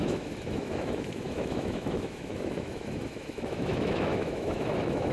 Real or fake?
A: fake